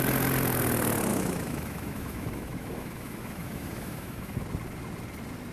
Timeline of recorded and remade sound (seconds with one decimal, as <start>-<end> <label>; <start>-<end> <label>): 0.0-1.1 recorded; 1.1-4.4 remade; 4.4-5.5 recorded